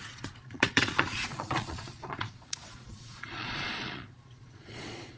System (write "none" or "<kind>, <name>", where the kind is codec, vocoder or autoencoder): vocoder, Vocos